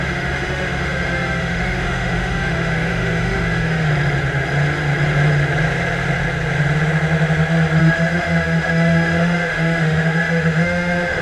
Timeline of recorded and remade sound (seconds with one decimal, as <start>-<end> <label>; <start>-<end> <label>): 0.0-3.9 remade; 3.9-7.8 recorded; 7.8-11.2 remade